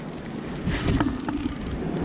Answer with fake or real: real